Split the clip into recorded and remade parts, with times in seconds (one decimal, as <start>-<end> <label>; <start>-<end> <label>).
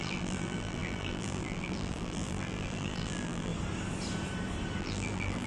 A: 0.0-3.5 remade; 3.5-4.8 recorded; 4.8-5.5 remade